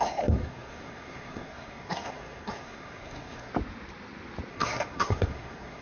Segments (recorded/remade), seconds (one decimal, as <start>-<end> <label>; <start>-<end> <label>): 0.0-3.5 remade; 3.5-4.5 recorded; 4.5-5.8 remade